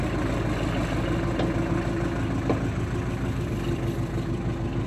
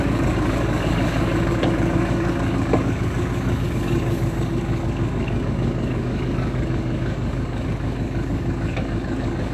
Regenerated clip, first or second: second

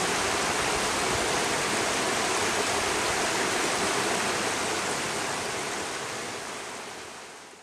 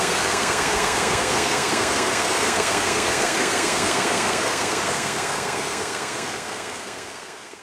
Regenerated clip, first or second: second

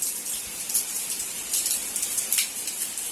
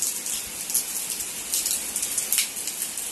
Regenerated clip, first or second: first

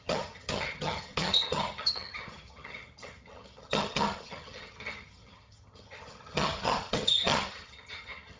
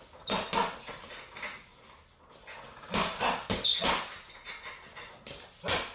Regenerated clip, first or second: first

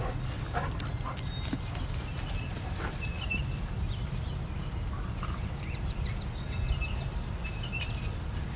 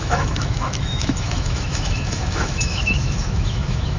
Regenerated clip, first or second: second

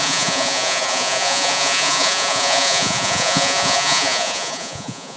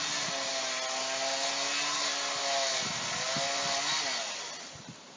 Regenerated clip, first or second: first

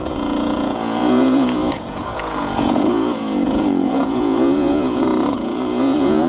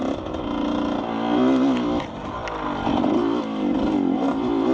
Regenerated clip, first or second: first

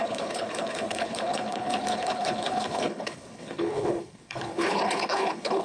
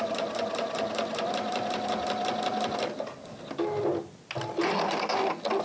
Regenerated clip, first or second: first